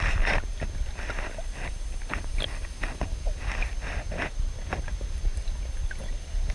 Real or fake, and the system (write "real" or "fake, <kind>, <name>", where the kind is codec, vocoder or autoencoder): real